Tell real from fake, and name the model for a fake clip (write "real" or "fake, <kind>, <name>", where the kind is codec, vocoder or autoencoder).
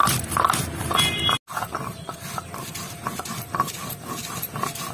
real